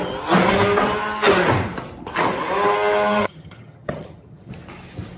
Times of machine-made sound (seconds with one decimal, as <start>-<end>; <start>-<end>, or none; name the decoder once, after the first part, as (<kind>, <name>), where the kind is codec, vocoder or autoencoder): 3.2-4.5 (vocoder, HiFi-GAN)